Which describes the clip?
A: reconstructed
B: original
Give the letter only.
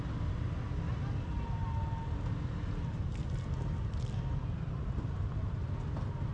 B